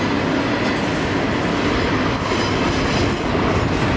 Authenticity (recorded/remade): recorded